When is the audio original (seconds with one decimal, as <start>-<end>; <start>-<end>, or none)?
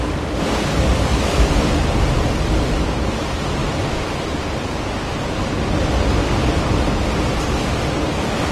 0.0-1.1; 1.7-8.5